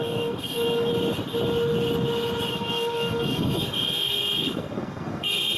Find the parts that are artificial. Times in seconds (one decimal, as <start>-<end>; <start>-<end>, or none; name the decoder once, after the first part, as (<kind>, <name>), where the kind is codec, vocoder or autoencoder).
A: 0.0-0.9 (codec, SNAC); 2.5-5.6